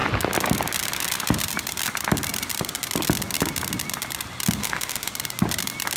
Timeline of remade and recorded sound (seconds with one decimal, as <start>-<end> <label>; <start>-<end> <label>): 0.0-4.6 recorded; 4.6-5.1 remade; 5.1-6.0 recorded